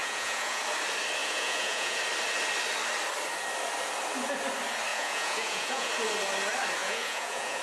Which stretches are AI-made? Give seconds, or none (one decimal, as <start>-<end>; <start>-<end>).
0.0-0.6; 1.2-2.0; 4.9-5.9; 6.8-7.6